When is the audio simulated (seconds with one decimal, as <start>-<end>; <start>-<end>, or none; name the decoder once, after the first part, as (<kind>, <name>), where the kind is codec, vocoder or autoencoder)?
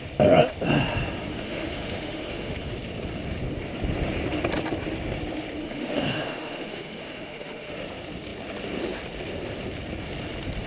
1.3-2.7 (autoencoder, DAC-VAE); 5.6-7.7